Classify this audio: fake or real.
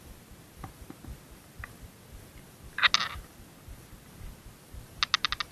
real